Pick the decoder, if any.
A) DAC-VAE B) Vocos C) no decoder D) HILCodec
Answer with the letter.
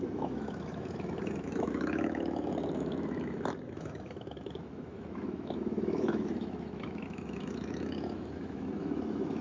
A